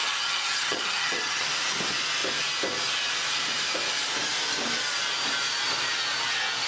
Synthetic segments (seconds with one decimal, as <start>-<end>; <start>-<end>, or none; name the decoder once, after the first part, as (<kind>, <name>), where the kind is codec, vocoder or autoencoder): 0.0-1.5 (vocoder, HiFi-GAN)